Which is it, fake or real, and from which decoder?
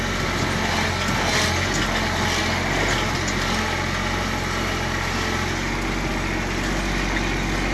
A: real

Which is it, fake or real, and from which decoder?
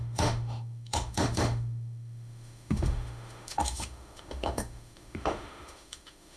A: fake, autoencoder, DAC-VAE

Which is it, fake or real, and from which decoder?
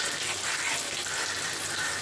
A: real